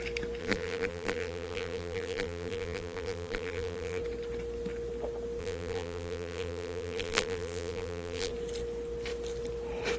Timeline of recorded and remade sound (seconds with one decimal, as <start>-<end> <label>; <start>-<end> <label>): 0.0-0.4 recorded; 0.4-4.0 remade; 4.0-5.4 recorded; 5.4-8.3 remade; 8.3-10.0 recorded